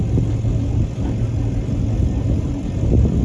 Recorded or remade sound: recorded